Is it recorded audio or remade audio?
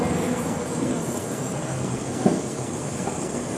remade